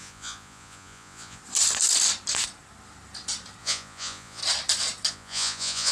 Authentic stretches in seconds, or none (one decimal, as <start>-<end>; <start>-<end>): 1.4-3.6; 4.4-5.1

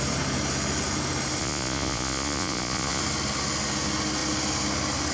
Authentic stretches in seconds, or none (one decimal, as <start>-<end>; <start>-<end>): 0.0-1.4; 3.0-5.1

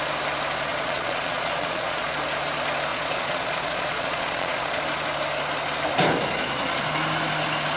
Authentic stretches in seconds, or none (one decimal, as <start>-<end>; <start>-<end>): 0.0-0.7; 2.1-2.9; 4.8-7.8

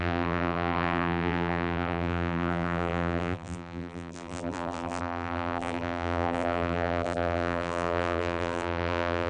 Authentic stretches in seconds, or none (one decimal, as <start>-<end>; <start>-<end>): none